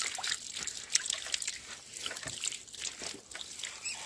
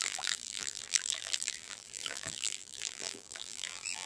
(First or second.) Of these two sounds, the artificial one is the second